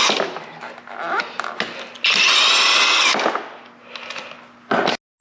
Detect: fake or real real